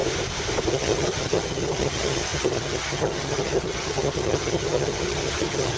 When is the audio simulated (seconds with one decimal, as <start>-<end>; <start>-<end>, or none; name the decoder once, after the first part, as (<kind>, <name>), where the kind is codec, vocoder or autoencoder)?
0.7-5.8 (vocoder, HiFi-GAN)

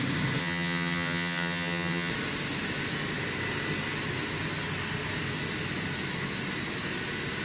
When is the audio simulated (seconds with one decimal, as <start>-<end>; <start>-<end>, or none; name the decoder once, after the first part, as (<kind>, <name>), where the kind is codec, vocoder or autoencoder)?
0.4-2.1 (vocoder, HiFi-GAN)

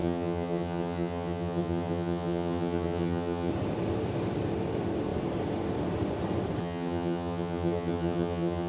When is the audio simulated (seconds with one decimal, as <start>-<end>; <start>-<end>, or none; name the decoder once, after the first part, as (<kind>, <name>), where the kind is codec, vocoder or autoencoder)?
0.0-3.5 (vocoder, HiFi-GAN); 6.6-8.7

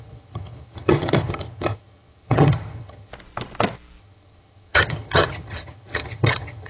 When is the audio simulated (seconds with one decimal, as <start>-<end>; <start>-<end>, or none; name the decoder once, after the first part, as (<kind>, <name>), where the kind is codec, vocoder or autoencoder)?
0.0-3.1 (vocoder, HiFi-GAN); 4.0-6.7

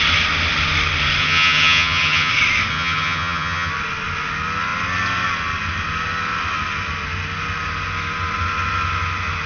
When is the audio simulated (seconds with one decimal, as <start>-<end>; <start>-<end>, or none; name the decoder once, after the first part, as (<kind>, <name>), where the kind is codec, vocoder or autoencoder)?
1.2-2.3 (vocoder, HiFi-GAN); 2.7-3.7

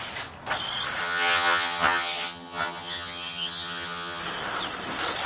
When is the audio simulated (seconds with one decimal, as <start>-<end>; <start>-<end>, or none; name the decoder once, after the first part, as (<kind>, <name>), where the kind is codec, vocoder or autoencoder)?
1.0-4.2 (vocoder, HiFi-GAN)

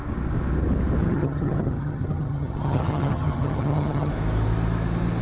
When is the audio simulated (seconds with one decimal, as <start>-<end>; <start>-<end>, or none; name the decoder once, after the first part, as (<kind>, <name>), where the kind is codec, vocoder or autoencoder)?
1.0-4.1 (vocoder, HiFi-GAN)

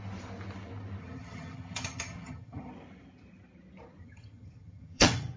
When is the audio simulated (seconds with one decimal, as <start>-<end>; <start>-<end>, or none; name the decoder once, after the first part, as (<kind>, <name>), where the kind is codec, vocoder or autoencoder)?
1.0-2.7 (vocoder, HiFi-GAN); 4.0-5.4